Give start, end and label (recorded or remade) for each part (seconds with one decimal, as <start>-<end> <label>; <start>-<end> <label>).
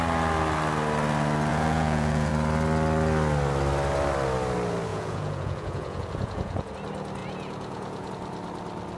0.0-1.5 recorded; 1.5-2.3 remade; 2.3-4.9 recorded; 4.9-6.7 remade; 6.7-7.2 recorded; 7.2-8.1 remade; 8.1-9.0 recorded